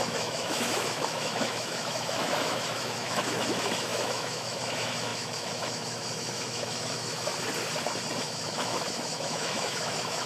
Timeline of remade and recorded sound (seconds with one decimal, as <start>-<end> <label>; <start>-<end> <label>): 0.0-7.3 remade; 7.3-8.2 recorded; 8.2-10.3 remade